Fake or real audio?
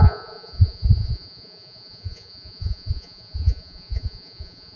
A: fake